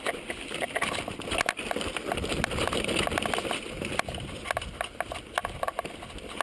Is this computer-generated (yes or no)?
no